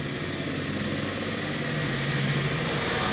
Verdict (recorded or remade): recorded